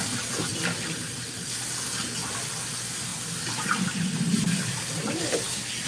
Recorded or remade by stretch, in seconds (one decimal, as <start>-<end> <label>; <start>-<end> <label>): 0.0-0.5 recorded; 0.5-1.6 remade; 1.6-3.1 recorded; 3.1-5.2 remade; 5.2-5.9 recorded